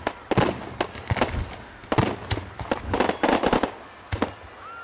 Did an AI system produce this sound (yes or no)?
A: no